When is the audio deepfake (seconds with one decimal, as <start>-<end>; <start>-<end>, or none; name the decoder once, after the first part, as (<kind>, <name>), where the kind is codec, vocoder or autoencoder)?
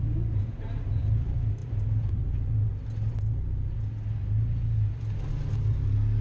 0.0-2.7 (vocoder, BigVGAN v2)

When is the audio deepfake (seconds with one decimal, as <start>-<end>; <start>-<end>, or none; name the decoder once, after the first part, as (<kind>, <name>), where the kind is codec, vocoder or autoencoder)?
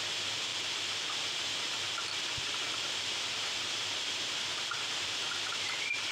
0.5-4.1 (vocoder, BigVGAN v2); 4.5-6.1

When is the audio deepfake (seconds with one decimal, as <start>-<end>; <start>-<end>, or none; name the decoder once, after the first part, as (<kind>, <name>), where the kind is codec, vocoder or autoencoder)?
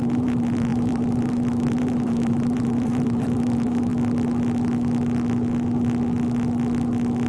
0.0-3.9 (vocoder, BigVGAN v2)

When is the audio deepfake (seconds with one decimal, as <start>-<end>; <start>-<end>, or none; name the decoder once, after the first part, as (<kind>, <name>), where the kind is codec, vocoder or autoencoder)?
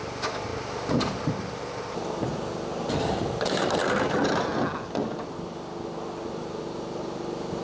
0.0-4.5 (vocoder, BigVGAN v2); 6.4-7.6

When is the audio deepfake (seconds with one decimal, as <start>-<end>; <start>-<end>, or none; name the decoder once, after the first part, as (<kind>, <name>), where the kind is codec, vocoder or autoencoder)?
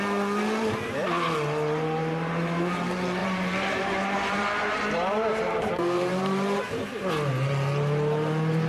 3.2-7.1 (vocoder, BigVGAN v2)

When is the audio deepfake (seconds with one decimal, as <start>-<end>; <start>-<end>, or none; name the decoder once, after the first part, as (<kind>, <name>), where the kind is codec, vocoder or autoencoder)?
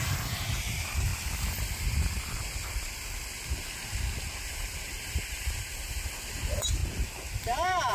0.0-1.1 (vocoder, BigVGAN v2); 4.4-6.8; 7.4-7.9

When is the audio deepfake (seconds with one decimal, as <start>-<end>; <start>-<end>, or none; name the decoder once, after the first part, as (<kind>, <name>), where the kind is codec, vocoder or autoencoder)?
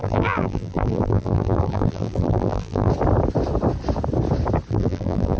0.0-2.9 (vocoder, BigVGAN v2); 4.7-5.4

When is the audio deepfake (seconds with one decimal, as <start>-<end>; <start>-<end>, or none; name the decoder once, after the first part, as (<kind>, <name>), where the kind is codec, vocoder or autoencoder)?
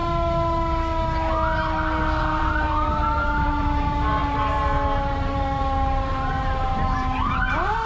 2.2-7.9 (vocoder, BigVGAN v2)